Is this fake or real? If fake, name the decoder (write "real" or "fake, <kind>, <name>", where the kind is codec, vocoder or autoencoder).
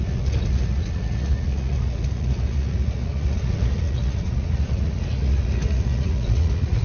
fake, vocoder, Vocos